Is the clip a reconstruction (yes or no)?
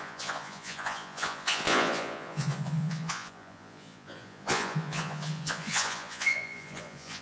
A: yes